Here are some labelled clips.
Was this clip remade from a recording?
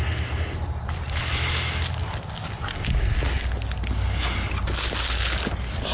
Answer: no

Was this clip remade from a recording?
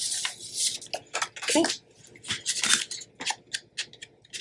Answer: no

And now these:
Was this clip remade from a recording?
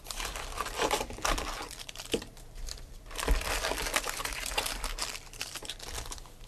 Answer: yes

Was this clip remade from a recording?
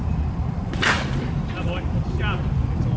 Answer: no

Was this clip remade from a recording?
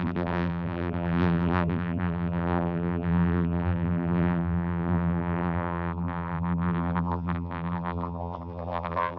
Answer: yes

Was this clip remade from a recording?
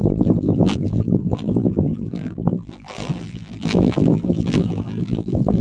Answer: yes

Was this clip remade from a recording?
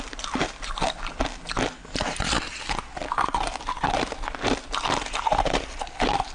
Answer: no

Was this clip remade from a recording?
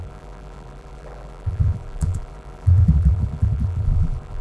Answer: yes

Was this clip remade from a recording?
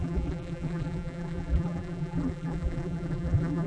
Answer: yes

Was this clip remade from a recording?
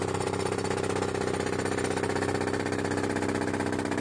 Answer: no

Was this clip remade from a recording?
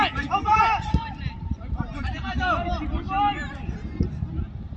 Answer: yes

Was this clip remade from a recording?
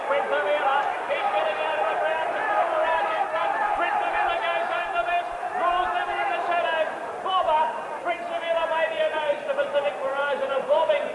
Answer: yes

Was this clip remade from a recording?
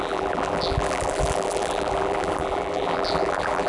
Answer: yes